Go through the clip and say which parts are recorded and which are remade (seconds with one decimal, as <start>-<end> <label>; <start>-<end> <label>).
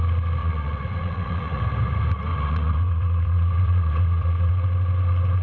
0.0-0.4 recorded; 0.4-1.6 remade; 1.6-2.3 recorded; 2.3-4.5 remade; 4.5-5.4 recorded